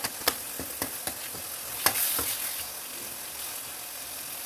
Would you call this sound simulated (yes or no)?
no